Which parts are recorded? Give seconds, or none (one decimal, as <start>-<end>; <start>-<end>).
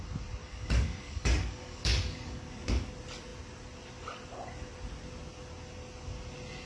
0.0-0.4; 2.9-6.7